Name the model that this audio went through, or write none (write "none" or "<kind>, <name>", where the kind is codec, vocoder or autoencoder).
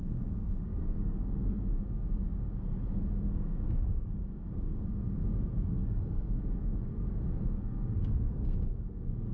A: codec, SNAC